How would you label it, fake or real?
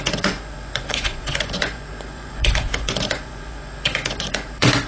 fake